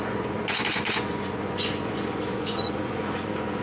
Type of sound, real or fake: fake